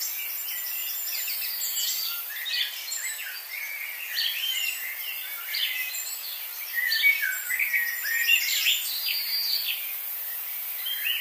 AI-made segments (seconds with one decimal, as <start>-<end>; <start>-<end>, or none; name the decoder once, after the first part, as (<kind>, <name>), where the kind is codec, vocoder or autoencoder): none